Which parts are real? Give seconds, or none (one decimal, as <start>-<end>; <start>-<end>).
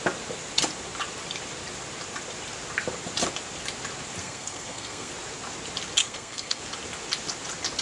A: 0.0-4.2; 5.1-6.0; 6.6-7.8